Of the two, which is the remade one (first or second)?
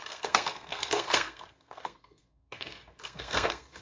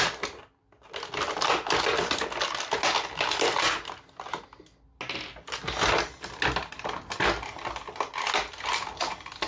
first